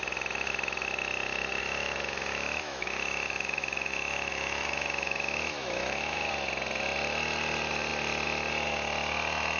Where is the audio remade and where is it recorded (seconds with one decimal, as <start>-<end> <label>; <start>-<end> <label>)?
0.0-1.6 recorded; 1.6-6.3 remade; 6.3-9.6 recorded